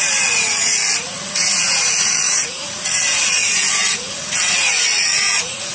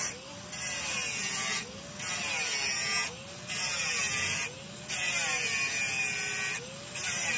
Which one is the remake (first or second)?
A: first